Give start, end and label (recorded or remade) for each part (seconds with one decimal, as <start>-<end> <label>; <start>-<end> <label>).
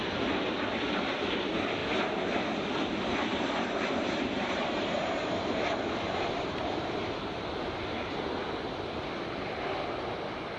0.0-1.8 recorded; 1.8-2.4 remade; 2.4-3.3 recorded; 3.3-8.1 remade; 8.1-10.6 recorded